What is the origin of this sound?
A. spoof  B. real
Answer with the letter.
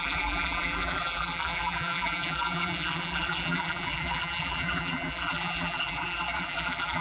A